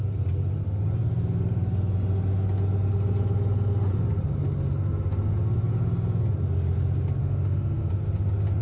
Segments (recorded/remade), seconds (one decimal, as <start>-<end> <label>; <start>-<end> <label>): 0.0-7.2 recorded; 7.2-7.9 remade; 7.9-8.6 recorded